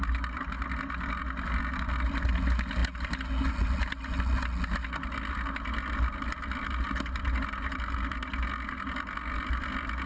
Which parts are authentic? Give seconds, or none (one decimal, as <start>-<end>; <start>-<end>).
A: 0.0-10.1